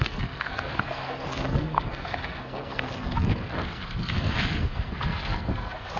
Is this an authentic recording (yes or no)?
no